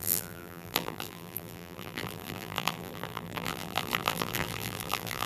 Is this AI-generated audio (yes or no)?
yes